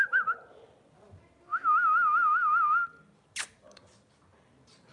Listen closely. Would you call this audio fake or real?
real